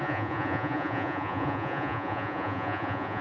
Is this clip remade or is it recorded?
remade